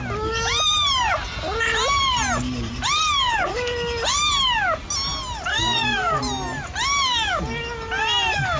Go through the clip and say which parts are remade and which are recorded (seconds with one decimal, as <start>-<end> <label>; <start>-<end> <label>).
0.0-5.5 recorded; 5.5-6.2 remade; 6.2-8.6 recorded